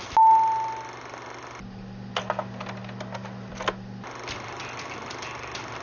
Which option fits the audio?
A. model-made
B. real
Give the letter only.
B